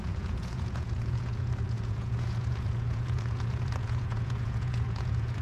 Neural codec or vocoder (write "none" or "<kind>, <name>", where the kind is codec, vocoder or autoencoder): vocoder, Vocos